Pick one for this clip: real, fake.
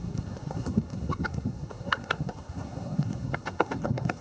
fake